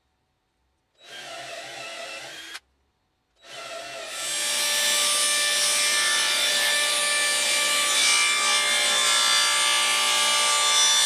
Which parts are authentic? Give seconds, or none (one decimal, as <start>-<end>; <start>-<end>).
0.0-5.9; 6.9-11.1